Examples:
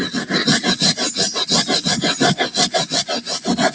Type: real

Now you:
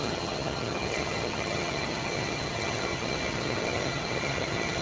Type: fake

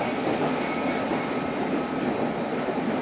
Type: real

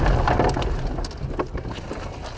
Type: real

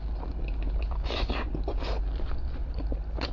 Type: real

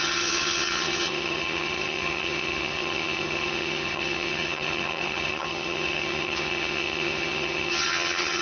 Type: fake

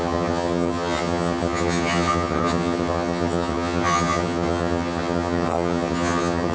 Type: fake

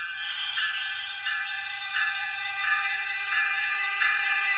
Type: fake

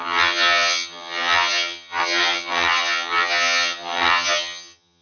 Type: fake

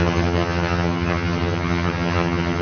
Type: fake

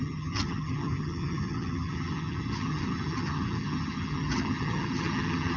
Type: fake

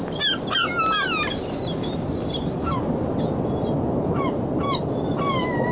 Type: real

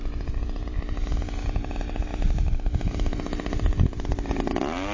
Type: real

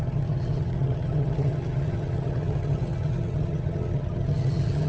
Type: fake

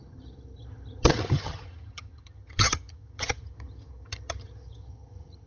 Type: fake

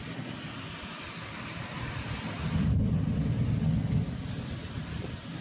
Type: real